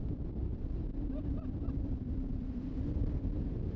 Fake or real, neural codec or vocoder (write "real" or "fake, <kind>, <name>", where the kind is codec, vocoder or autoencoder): real